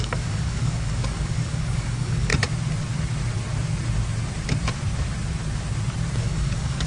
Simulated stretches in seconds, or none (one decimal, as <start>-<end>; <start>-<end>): 0.0-2.3; 6.2-6.9